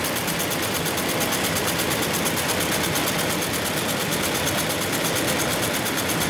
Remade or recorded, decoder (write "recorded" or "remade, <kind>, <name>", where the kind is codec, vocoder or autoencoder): recorded